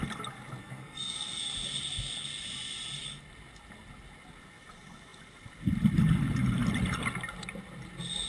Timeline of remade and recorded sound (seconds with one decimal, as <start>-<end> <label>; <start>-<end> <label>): 0.0-0.6 recorded; 0.6-1.4 remade; 1.4-8.3 recorded

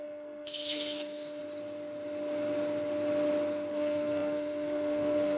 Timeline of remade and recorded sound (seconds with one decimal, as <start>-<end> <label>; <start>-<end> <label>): 0.0-1.4 remade; 1.4-3.7 recorded; 3.7-5.4 remade